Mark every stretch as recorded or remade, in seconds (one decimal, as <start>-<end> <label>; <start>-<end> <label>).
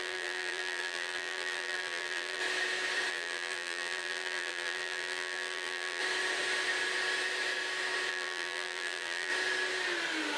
0.0-2.4 remade; 2.4-3.1 recorded; 3.1-6.0 remade; 6.0-8.1 recorded; 8.1-9.3 remade; 9.3-10.4 recorded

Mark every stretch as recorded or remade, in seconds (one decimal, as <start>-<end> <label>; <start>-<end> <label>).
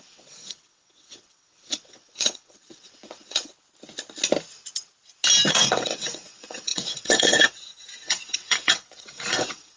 0.0-3.5 remade; 3.5-5.5 recorded; 5.5-9.8 remade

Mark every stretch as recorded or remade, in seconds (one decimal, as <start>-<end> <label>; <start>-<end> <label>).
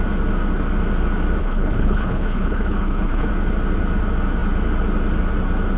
0.0-1.4 recorded; 1.4-3.3 remade; 3.3-5.8 recorded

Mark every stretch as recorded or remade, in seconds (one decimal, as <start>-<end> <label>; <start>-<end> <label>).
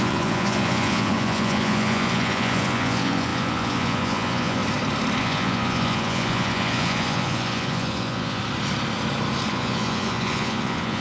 0.0-4.6 remade; 4.6-5.2 recorded; 5.2-8.4 remade; 8.4-9.5 recorded; 9.5-11.0 remade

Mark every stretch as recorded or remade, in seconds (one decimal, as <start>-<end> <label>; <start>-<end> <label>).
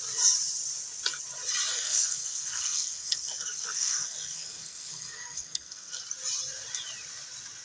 0.0-1.7 recorded; 1.7-6.0 remade; 6.0-7.6 recorded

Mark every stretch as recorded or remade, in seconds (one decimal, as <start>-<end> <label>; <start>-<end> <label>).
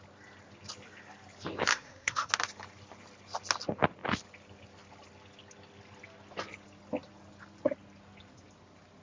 0.0-1.7 recorded; 1.7-2.3 remade; 2.3-9.0 recorded